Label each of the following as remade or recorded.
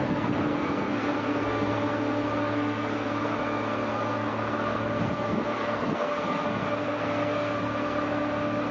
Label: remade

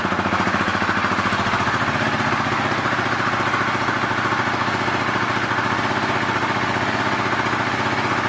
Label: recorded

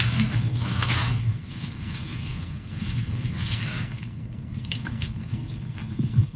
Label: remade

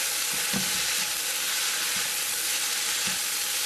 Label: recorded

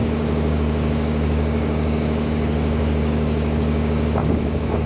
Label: remade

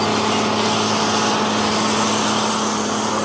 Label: recorded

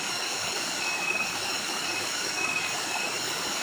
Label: remade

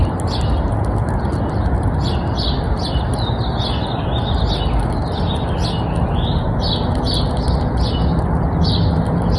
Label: recorded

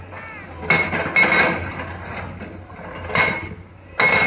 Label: recorded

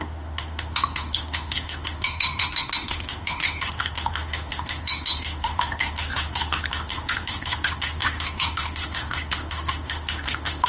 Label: remade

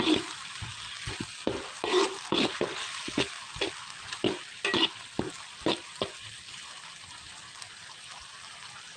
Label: recorded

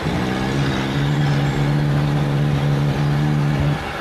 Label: recorded